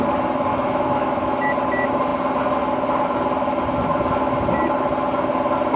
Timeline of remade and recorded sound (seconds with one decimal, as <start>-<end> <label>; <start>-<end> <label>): 0.0-0.5 recorded; 0.5-1.5 remade; 1.5-5.8 recorded